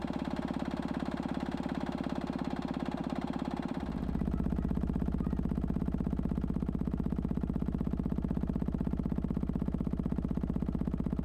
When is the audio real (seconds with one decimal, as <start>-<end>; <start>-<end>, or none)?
0.0-11.2